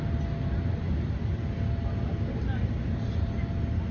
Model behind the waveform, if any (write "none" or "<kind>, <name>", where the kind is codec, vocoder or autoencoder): none